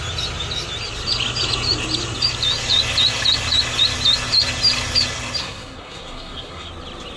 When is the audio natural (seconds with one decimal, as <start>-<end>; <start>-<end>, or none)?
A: 0.0-5.4; 6.7-7.2